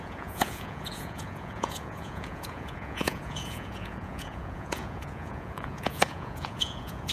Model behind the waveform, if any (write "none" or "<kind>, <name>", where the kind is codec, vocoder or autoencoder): vocoder, Vocos